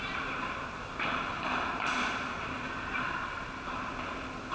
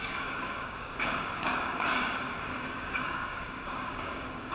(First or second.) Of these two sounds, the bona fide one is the first